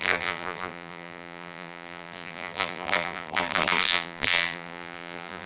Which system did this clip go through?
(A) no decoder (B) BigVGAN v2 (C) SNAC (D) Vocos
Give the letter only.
B